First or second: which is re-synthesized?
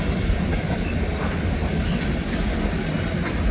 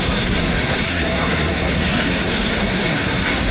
second